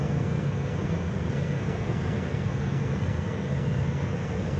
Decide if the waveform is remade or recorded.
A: remade